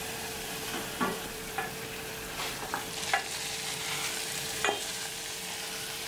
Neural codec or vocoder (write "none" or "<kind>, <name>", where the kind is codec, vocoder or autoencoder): vocoder, BigVGAN v2